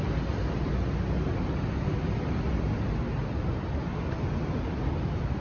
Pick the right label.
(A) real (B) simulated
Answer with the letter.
A